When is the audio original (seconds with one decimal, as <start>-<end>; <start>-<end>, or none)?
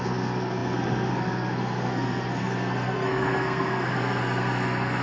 none